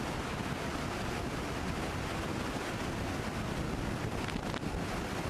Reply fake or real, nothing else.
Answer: real